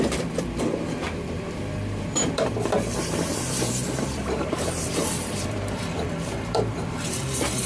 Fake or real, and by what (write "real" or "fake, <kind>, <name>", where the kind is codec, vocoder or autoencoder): fake, vocoder, BigVGAN v2